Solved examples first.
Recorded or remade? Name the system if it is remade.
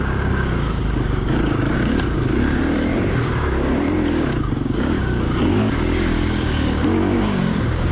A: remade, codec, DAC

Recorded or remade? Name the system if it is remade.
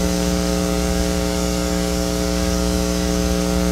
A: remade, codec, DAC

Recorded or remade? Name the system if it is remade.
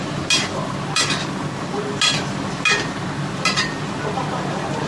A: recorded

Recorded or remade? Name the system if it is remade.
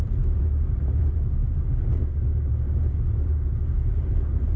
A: recorded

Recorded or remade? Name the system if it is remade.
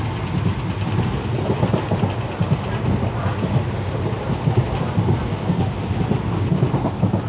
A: recorded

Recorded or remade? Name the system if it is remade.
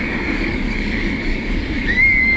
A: remade, codec, DAC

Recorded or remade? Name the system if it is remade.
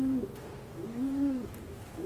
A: remade, codec, DAC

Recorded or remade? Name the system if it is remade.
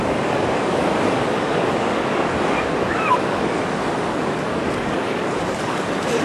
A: remade, codec, DAC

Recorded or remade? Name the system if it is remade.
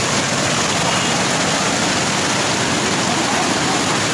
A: recorded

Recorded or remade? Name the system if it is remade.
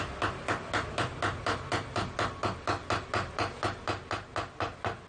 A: recorded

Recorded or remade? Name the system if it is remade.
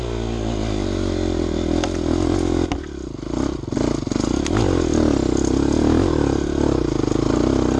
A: recorded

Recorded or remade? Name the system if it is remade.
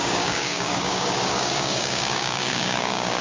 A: remade, codec, DAC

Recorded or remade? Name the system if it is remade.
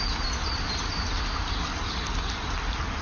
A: recorded